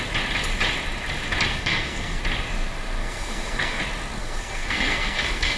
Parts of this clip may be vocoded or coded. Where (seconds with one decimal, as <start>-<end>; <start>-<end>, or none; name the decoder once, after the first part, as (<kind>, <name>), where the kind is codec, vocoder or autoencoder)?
1.5-2.2 (codec, SNAC); 3.0-3.8; 4.2-5.6